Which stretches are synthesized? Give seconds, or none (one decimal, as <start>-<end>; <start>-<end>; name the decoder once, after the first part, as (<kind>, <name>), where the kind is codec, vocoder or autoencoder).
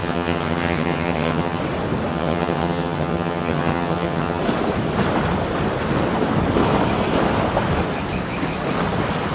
0.0-1.6 (vocoder, HiFi-GAN); 2.1-4.4